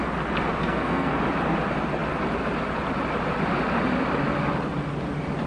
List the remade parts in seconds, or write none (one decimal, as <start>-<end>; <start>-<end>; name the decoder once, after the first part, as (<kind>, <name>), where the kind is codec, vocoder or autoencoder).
0.6-1.2 (codec, SNAC)